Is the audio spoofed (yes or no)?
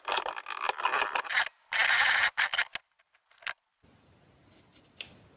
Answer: no